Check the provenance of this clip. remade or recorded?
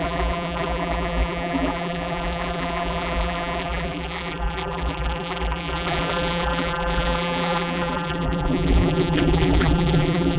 remade